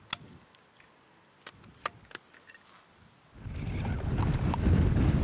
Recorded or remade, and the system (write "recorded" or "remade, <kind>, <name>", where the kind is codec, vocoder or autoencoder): recorded